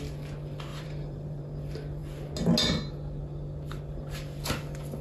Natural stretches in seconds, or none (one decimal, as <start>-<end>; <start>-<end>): 0.0-0.7; 1.4-5.0